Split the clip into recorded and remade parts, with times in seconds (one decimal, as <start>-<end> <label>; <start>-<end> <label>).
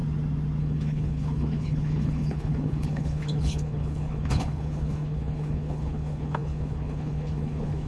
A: 0.0-0.6 recorded; 0.6-7.9 remade